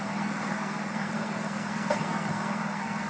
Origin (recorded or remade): remade